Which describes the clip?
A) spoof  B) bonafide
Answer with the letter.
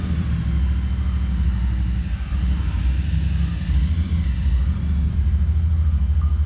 B